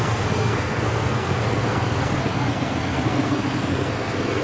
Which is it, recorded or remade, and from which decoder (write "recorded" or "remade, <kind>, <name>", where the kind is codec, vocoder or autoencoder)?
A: remade, codec, SNAC